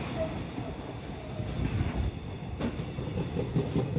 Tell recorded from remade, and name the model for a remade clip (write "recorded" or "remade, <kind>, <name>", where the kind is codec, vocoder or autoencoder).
recorded